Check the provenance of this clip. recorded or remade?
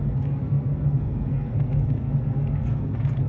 remade